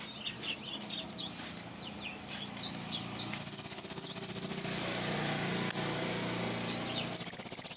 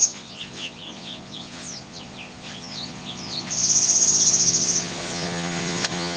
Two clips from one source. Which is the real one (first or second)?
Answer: first